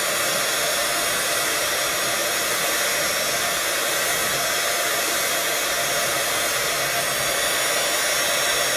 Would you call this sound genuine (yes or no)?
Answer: yes